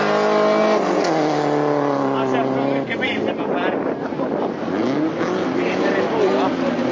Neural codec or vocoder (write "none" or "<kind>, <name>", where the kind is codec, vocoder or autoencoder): none